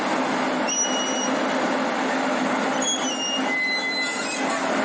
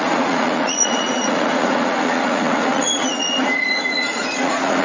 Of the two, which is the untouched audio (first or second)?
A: first